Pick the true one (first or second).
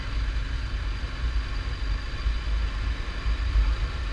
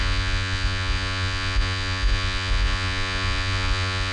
first